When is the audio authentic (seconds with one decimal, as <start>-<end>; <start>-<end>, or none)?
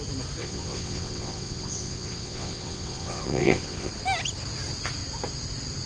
0.0-0.4; 3.9-5.9